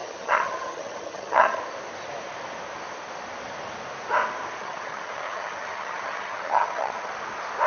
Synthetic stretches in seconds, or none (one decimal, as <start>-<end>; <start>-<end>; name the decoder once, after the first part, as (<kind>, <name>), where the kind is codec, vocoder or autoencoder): 0.0-1.6 (vocoder, HiFi-GAN); 4.6-7.1